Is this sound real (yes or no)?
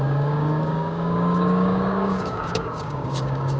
no